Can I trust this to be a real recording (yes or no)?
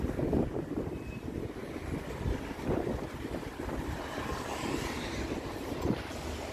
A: yes